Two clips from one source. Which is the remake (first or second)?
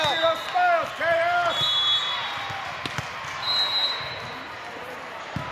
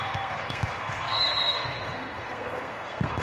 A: second